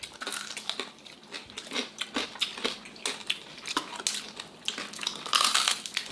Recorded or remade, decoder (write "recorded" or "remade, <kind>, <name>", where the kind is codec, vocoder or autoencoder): recorded